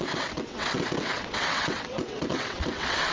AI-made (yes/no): yes